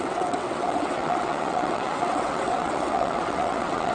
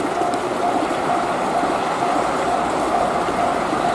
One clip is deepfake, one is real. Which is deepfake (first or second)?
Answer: first